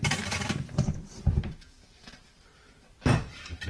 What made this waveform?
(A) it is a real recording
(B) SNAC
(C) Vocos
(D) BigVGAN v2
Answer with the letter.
D